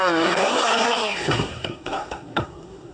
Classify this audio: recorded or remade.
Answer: remade